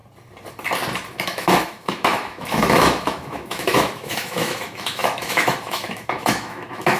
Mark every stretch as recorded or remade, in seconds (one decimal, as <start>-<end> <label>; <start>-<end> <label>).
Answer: 0.0-1.1 recorded; 1.1-7.0 remade